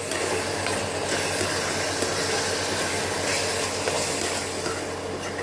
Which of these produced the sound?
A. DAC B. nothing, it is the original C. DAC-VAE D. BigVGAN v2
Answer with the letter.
B